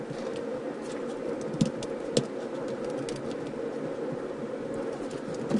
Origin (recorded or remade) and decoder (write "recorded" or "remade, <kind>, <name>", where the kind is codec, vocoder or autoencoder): recorded